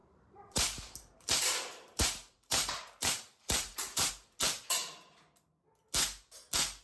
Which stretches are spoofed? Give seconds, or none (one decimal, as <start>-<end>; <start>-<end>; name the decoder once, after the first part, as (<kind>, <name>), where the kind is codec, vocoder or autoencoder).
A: 0.0-4.1 (vocoder, BigVGAN v2)

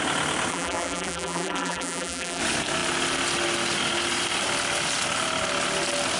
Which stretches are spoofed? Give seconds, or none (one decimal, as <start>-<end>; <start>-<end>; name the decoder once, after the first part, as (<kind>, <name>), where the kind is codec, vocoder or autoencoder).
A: 0.5-2.4 (vocoder, BigVGAN v2)

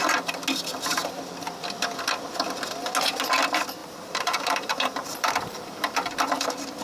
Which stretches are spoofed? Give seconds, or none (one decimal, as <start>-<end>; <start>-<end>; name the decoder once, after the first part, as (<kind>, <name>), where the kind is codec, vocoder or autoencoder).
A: 3.8-6.1 (vocoder, BigVGAN v2)